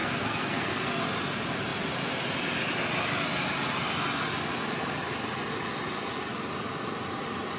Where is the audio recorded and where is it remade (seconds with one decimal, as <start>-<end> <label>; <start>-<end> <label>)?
0.0-1.0 remade; 1.0-7.6 recorded